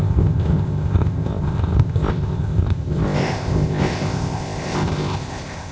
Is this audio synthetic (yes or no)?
yes